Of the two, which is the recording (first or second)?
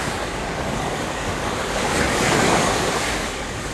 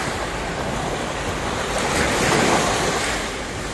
second